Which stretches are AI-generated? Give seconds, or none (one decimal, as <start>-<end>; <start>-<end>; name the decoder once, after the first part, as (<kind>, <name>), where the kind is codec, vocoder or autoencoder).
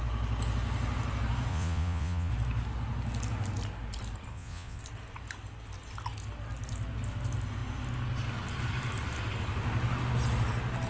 1.5-2.3 (vocoder, Vocos); 4.3-4.8